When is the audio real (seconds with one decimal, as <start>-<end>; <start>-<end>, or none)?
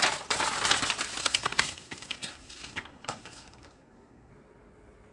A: 0.0-1.2; 4.3-5.1